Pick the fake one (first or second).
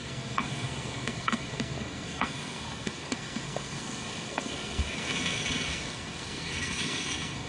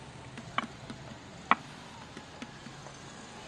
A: first